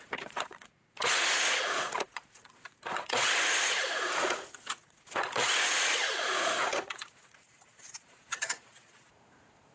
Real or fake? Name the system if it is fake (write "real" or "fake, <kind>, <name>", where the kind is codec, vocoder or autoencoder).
fake, vocoder, Vocos